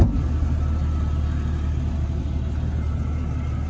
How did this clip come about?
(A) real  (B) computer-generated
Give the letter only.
A